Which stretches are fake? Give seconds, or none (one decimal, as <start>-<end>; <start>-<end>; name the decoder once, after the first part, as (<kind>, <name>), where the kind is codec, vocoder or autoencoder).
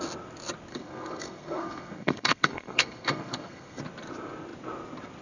0.7-3.8 (codec, SNAC)